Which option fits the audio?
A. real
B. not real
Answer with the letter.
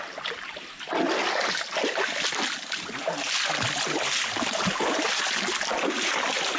A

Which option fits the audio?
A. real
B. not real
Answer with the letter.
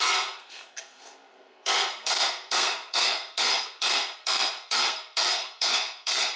B